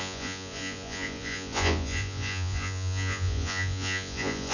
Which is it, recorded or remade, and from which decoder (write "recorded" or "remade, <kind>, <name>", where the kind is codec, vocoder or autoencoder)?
remade, vocoder, Vocos